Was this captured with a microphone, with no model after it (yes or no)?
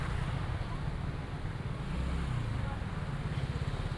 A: yes